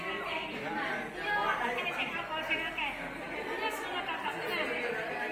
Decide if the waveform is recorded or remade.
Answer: recorded